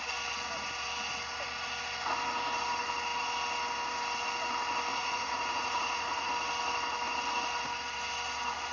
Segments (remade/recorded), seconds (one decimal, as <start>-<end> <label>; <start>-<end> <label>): 0.0-4.9 recorded; 4.9-6.3 remade; 6.3-8.7 recorded